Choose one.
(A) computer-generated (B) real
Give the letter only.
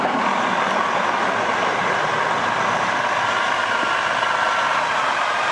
B